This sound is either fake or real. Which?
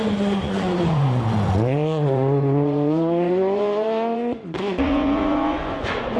fake